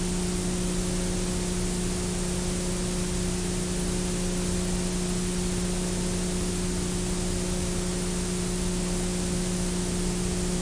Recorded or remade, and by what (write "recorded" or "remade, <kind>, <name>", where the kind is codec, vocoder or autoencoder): recorded